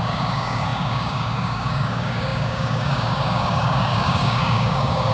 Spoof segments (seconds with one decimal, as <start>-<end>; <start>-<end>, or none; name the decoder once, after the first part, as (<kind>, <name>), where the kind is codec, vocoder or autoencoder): 0.0-5.1 (codec, DAC)